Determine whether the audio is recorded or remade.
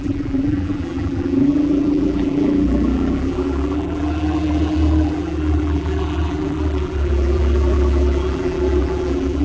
remade